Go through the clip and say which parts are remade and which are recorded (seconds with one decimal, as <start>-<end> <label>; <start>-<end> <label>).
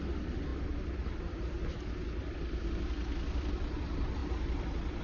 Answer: 0.0-0.5 remade; 0.5-3.5 recorded; 3.5-5.0 remade